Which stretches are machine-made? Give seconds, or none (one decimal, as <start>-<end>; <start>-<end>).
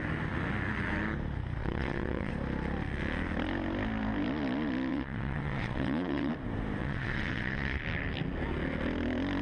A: 1.6-2.3; 4.9-6.3; 6.8-7.8